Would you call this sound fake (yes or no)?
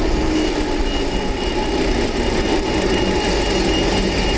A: no